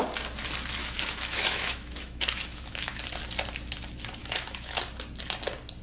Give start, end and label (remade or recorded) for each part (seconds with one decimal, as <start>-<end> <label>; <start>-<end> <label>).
0.0-0.8 recorded; 0.8-3.0 remade; 3.0-4.2 recorded; 4.2-4.8 remade; 4.8-5.8 recorded